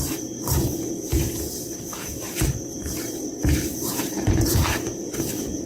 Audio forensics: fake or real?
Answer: fake